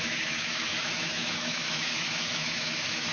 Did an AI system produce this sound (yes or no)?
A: yes